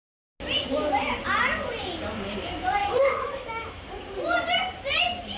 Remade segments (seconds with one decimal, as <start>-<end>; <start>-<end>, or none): 2.8-3.9